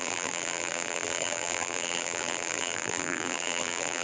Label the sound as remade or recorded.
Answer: remade